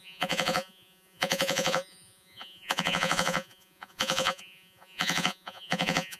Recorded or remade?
remade